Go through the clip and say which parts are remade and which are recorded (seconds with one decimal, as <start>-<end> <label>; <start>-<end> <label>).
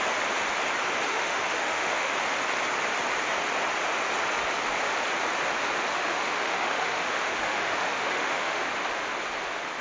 0.0-1.1 recorded; 1.1-2.1 remade; 2.1-5.9 recorded; 5.9-8.6 remade; 8.6-9.8 recorded